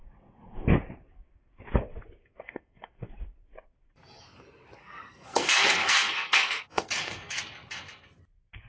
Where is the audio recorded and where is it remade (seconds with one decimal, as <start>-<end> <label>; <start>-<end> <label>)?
0.0-2.2 recorded; 2.2-3.1 remade; 3.1-4.8 recorded; 4.8-7.4 remade; 7.4-8.7 recorded